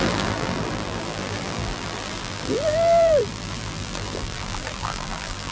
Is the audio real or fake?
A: fake